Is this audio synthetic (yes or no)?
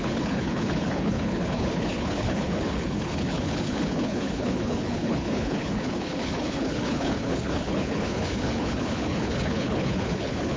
yes